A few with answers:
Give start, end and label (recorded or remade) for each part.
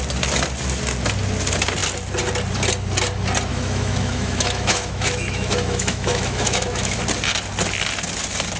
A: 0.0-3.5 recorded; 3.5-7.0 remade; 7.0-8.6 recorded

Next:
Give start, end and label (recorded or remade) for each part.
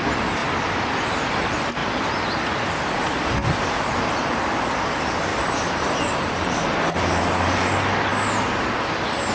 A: 0.0-5.3 recorded; 5.3-7.5 remade; 7.5-9.3 recorded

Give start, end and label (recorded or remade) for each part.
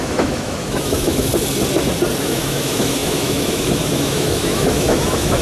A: 0.0-1.3 remade; 1.3-2.2 recorded; 2.2-5.4 remade